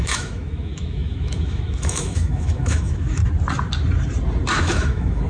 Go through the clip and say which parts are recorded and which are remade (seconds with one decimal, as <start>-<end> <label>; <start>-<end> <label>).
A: 0.0-3.2 remade; 3.2-4.6 recorded; 4.6-5.3 remade